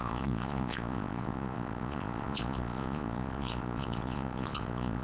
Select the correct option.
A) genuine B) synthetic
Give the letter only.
B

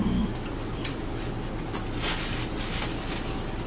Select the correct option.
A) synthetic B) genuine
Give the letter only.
B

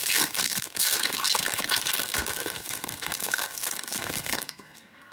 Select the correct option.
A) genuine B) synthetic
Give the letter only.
B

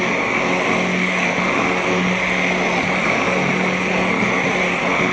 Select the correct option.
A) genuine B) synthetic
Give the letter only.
A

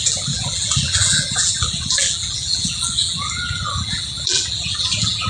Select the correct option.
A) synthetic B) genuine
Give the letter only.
A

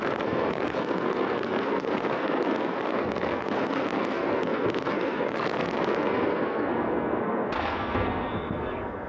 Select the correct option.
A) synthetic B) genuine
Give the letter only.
A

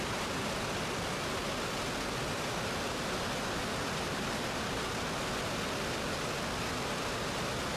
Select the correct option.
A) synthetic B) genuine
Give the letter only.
B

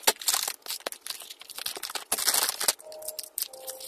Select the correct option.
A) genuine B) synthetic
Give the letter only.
A